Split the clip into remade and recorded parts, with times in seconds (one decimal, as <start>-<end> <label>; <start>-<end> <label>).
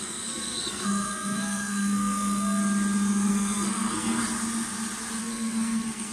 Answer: 0.0-2.6 remade; 2.6-3.3 recorded; 3.3-4.2 remade; 4.2-5.2 recorded; 5.2-6.1 remade